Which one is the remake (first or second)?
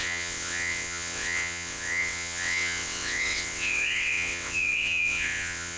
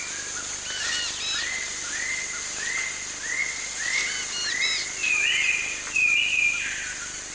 first